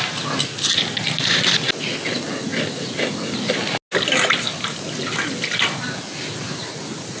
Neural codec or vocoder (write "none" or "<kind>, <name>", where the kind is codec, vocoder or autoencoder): none